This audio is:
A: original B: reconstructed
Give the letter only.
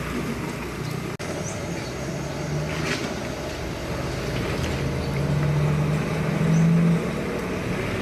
A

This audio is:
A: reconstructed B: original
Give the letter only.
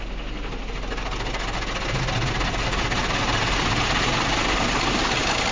B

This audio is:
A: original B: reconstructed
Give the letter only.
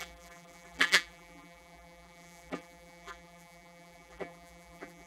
B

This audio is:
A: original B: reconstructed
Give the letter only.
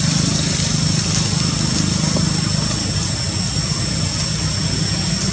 A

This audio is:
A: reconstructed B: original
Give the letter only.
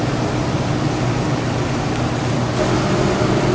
B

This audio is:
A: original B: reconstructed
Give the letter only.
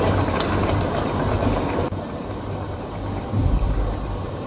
B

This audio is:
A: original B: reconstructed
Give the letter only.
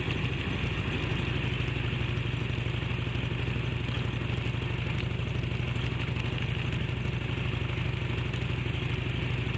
A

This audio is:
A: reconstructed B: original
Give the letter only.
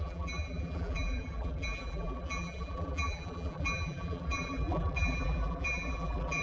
A